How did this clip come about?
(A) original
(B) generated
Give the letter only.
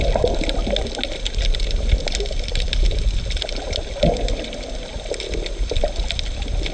A